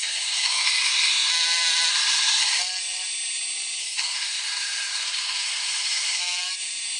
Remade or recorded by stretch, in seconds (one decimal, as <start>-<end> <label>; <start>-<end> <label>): 0.0-1.3 remade; 1.3-1.9 recorded; 1.9-2.6 remade; 2.6-3.8 recorded; 3.8-6.2 remade; 6.2-7.0 recorded